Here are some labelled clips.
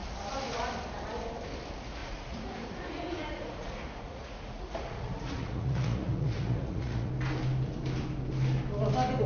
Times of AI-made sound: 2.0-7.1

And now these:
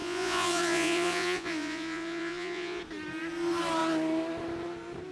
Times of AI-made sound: 0.0-2.8

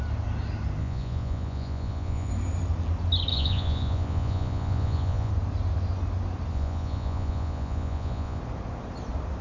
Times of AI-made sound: 0.8-2.3; 3.3-5.3; 6.5-8.4

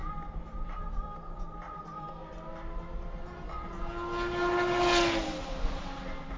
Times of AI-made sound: none

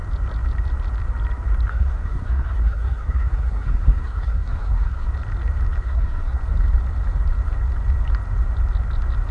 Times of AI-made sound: 1.7-5.1; 5.8-6.4

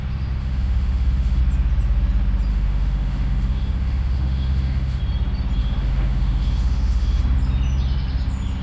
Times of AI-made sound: 0.4-1.4; 2.5-5.0; 5.6-7.2

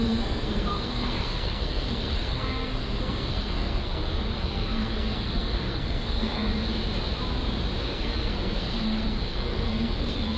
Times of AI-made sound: 0.0-6.5; 7.8-10.4